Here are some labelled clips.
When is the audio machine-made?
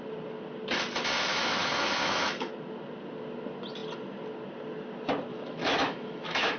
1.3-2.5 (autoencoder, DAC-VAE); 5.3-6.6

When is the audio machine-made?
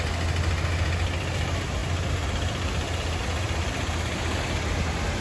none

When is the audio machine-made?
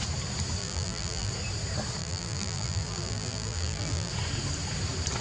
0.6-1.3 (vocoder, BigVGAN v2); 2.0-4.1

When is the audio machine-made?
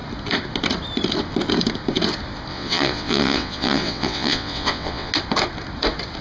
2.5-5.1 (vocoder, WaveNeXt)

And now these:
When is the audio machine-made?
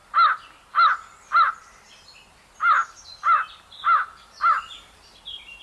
none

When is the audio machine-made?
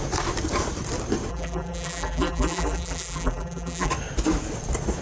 1.3-3.9 (vocoder, BigVGAN v2)